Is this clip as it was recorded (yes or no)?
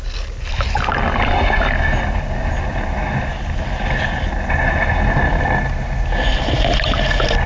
yes